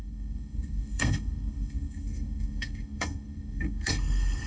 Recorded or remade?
remade